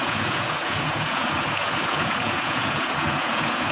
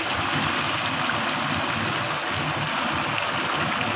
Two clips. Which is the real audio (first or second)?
second